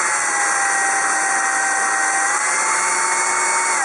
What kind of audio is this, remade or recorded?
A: recorded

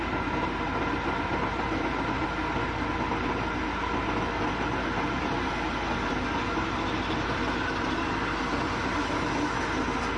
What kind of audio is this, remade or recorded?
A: recorded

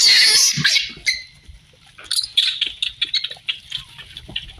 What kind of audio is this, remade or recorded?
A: recorded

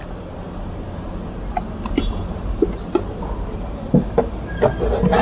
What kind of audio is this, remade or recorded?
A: recorded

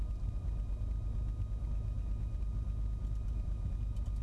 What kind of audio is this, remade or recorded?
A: recorded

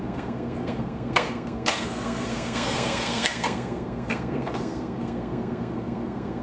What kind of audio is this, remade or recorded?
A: remade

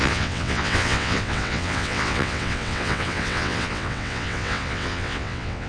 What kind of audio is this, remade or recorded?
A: remade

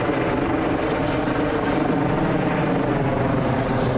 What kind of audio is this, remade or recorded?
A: recorded